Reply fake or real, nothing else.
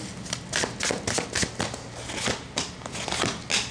real